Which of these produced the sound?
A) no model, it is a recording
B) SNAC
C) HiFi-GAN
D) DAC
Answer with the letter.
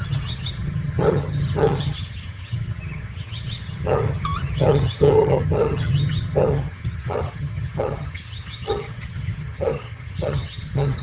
C